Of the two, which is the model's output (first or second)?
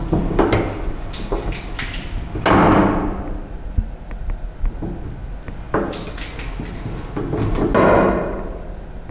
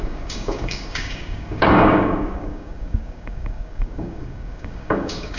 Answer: second